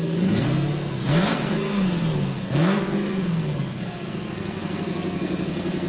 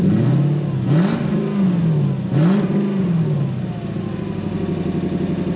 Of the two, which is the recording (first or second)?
second